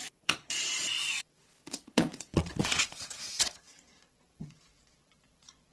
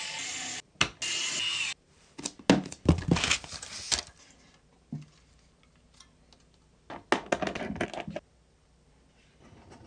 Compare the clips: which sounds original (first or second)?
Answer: second